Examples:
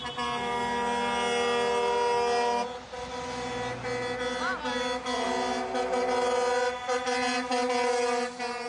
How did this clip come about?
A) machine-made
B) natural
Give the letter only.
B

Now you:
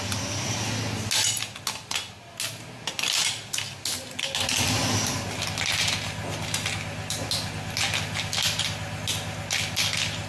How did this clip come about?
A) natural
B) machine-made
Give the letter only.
A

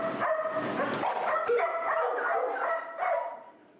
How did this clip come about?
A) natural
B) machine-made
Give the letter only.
A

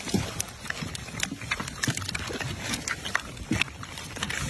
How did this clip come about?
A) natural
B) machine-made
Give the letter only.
A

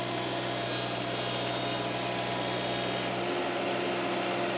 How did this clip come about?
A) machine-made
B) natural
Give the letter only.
B